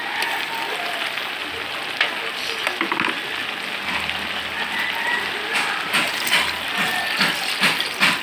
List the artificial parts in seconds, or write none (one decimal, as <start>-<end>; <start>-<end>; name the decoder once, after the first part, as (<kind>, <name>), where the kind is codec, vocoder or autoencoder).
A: none